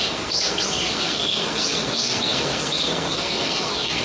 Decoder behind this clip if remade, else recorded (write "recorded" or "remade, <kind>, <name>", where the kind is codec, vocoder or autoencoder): remade, codec, SNAC